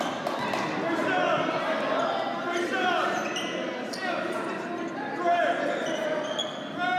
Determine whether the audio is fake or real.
real